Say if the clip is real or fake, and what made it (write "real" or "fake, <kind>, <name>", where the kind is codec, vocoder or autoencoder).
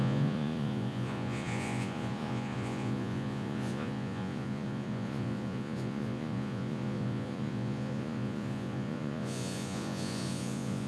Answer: fake, vocoder, Vocos